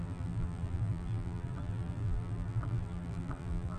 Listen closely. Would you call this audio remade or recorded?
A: remade